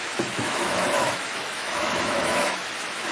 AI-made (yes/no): yes